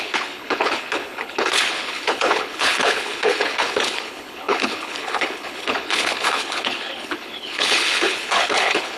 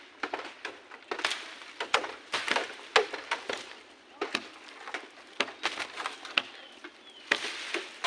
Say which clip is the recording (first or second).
second